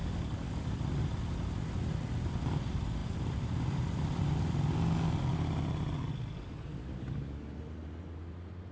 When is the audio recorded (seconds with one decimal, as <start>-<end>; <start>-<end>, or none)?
0.7-6.7; 7.5-8.7